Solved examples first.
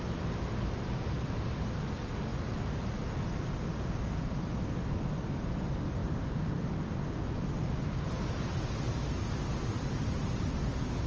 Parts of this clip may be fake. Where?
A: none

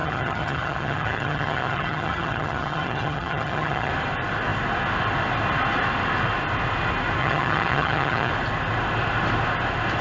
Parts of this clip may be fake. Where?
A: 0.0-3.9 (vocoder, HiFi-GAN); 7.2-8.3

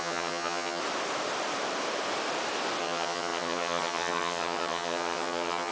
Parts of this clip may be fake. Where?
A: 0.0-0.8 (vocoder, HiFi-GAN); 2.8-5.7

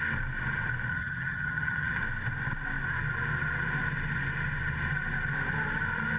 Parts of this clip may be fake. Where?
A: 0.9-2.0 (vocoder, HiFi-GAN)